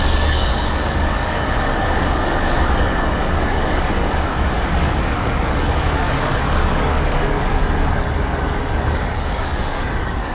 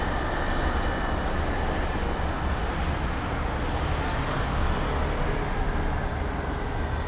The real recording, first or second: second